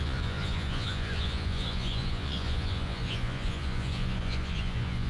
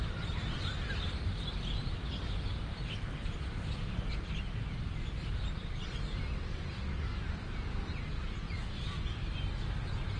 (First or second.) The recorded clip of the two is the second